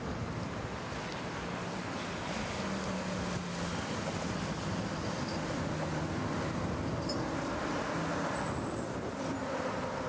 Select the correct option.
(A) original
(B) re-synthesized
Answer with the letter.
A